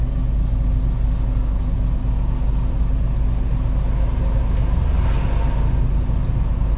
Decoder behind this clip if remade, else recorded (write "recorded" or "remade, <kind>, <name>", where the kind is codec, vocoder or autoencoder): recorded